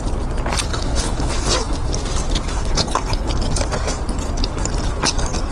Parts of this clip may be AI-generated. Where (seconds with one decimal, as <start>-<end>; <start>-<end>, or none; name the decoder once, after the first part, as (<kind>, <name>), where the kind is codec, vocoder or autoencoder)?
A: 0.7-1.3 (codec, HILCodec); 2.6-3.3